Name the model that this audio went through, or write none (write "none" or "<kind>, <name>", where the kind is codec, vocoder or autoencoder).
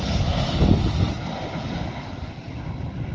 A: none